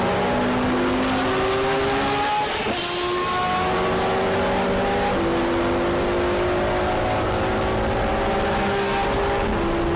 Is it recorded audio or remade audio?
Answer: recorded